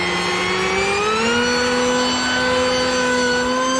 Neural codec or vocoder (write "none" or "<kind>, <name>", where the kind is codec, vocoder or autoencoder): none